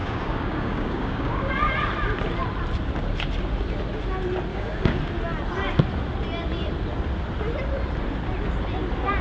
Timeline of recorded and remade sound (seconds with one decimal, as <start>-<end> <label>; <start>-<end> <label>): 0.0-1.5 remade; 1.5-4.5 recorded; 4.5-5.0 remade; 5.0-9.2 recorded